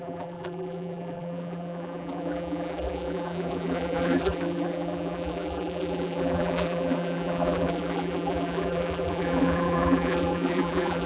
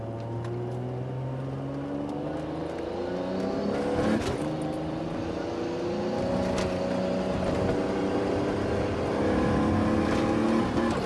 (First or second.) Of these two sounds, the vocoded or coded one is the first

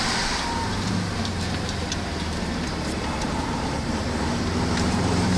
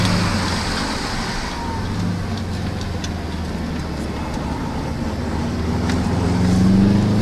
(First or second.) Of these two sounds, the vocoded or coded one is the first